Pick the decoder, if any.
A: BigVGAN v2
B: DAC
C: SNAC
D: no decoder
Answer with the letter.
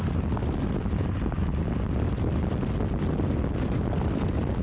D